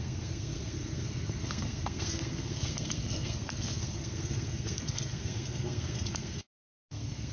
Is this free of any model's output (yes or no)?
no